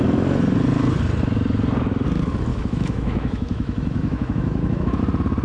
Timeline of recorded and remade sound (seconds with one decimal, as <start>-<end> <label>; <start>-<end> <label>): 0.0-2.5 recorded; 2.5-5.0 remade; 5.0-5.4 recorded